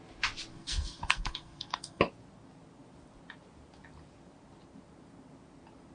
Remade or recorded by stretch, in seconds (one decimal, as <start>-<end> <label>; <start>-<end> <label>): 0.0-0.5 recorded; 0.5-2.0 remade; 2.0-5.9 recorded